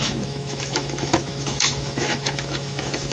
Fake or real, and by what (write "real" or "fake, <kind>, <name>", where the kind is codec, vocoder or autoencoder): fake, autoencoder, DAC-VAE